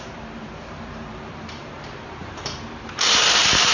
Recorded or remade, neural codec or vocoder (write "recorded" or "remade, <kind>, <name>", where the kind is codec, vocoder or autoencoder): remade, vocoder, BigVGAN v2